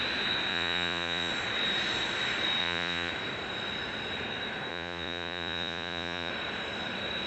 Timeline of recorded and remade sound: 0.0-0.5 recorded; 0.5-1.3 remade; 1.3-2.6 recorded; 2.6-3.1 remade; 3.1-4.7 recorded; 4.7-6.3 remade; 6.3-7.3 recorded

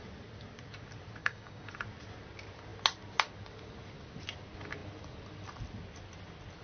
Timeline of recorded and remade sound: 0.0-1.2 recorded; 1.2-1.7 remade; 1.7-6.6 recorded

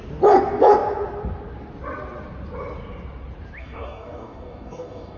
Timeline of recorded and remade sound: 0.0-3.6 recorded; 3.6-5.2 remade

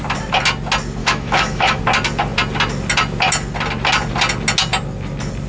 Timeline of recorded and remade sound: 0.0-1.0 recorded; 1.0-1.8 remade; 1.8-5.5 recorded

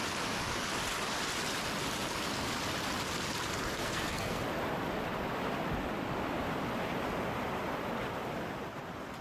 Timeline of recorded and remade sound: 0.0-3.8 recorded; 3.8-4.4 remade; 4.4-9.2 recorded

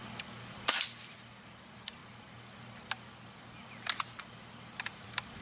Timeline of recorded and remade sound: 0.0-1.5 recorded; 1.5-2.0 remade; 2.0-4.5 recorded; 4.5-5.4 remade

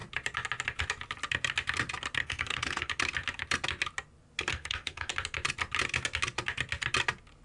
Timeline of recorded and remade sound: 0.0-2.2 recorded; 2.2-2.9 remade; 2.9-4.5 recorded; 4.5-5.1 remade; 5.1-7.4 recorded